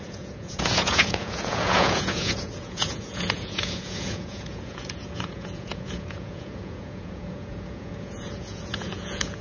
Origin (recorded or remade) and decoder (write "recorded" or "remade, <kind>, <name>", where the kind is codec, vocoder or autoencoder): remade, vocoder, Vocos